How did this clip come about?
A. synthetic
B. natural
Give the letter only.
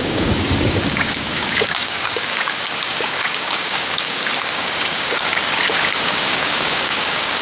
A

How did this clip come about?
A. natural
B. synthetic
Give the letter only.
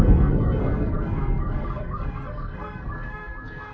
B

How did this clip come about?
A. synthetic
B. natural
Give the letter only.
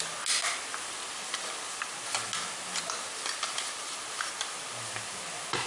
B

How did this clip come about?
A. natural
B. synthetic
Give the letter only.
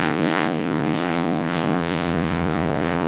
B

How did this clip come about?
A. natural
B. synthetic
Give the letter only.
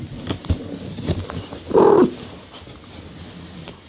A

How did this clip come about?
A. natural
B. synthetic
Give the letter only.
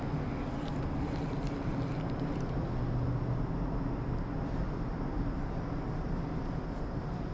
A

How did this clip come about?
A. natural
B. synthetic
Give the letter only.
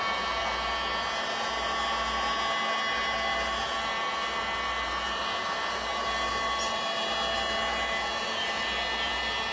A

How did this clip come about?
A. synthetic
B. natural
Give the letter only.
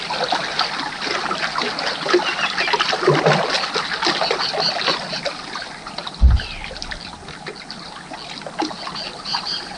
B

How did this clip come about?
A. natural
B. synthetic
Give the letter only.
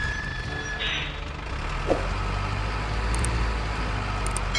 A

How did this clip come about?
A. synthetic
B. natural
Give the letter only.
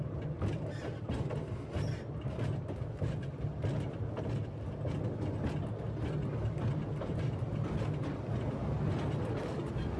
B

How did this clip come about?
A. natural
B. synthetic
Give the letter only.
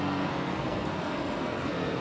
B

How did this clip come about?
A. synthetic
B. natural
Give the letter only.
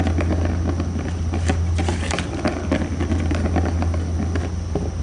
B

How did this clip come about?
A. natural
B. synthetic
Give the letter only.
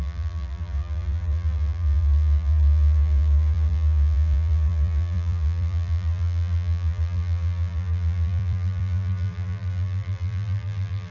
B